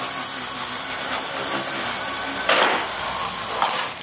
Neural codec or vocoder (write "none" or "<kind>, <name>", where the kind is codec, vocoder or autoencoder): none